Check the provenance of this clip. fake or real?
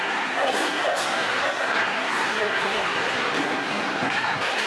fake